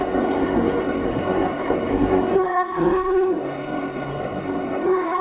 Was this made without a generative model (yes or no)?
no